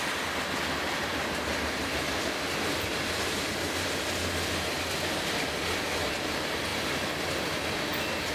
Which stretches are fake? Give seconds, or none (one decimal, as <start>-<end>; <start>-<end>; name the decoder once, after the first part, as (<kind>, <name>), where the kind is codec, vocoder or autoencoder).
6.7-7.2 (vocoder, BigVGAN v2)